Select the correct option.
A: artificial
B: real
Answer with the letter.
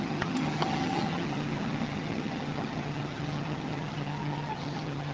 A